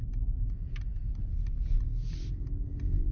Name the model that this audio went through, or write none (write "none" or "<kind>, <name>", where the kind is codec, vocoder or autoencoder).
none